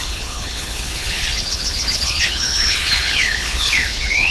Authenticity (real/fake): fake